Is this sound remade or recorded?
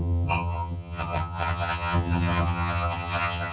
remade